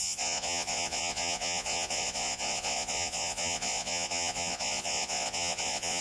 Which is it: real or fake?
fake